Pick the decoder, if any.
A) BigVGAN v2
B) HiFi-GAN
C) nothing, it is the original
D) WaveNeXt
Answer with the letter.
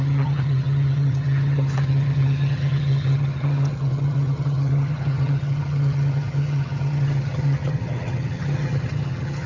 B